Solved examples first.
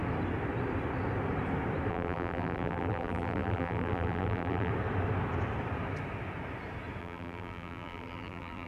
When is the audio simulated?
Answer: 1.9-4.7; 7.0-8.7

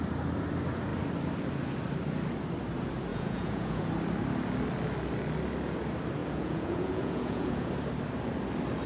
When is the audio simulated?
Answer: 3.1-3.9; 6.2-7.7

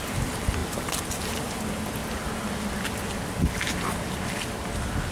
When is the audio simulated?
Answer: none

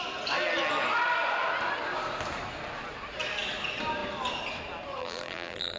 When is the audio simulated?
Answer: 5.0-5.8